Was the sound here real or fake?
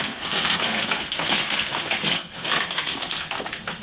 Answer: fake